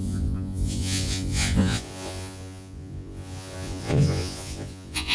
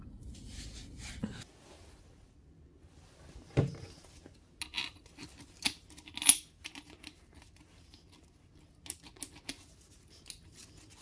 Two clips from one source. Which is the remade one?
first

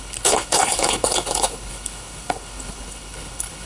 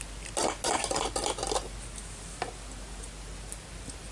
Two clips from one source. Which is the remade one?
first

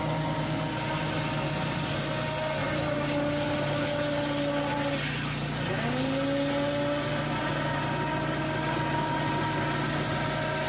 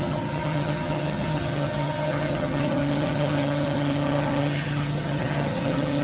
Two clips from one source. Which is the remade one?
second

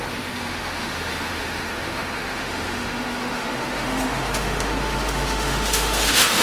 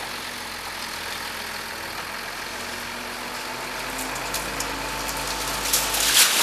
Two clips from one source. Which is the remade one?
first